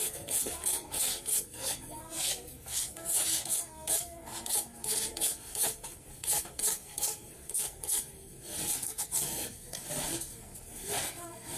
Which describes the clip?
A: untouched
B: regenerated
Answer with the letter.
B